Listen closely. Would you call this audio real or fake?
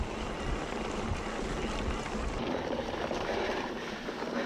real